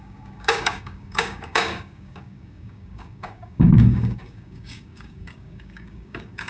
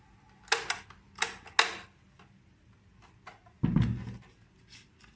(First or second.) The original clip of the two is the second